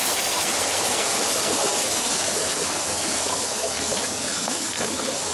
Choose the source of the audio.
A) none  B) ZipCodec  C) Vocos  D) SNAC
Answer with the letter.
D